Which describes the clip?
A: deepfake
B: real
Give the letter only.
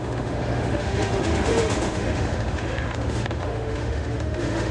A